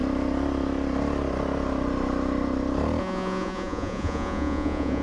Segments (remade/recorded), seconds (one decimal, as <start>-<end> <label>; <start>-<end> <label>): 0.0-3.0 recorded; 3.0-5.0 remade